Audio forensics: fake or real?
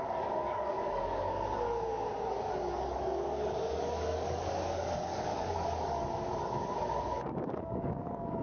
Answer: fake